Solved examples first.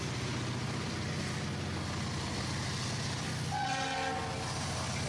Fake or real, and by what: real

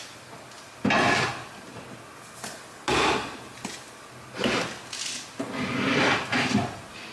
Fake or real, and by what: real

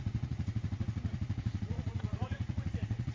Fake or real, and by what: fake, vocoder, Vocos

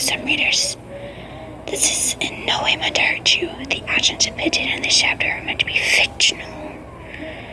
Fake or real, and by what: real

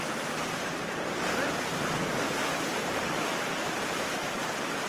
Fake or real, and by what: fake, vocoder, BigVGAN v2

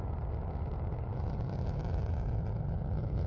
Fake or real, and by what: real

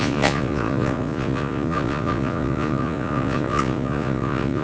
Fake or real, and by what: fake, vocoder, Vocos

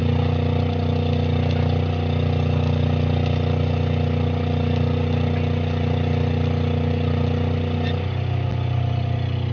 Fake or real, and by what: real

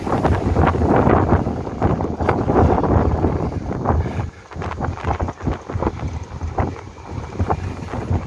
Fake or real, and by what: real